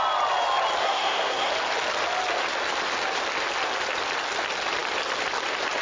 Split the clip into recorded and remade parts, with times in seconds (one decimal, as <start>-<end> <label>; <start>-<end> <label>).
0.0-0.8 recorded; 0.8-1.5 remade; 1.5-5.8 recorded